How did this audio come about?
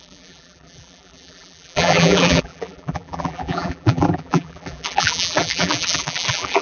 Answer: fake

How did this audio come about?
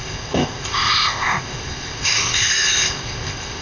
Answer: fake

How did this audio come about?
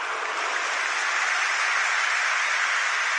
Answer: real